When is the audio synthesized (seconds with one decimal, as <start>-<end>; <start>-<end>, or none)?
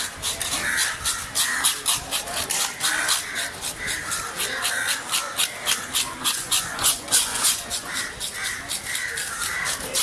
6.2-7.9